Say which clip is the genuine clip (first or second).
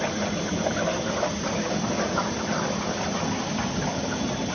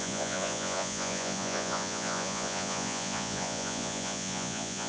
first